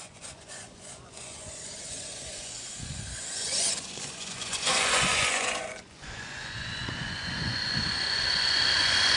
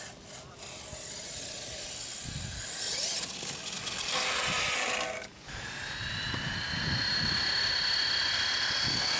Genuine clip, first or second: second